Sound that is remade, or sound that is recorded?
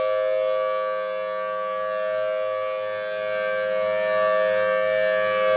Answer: recorded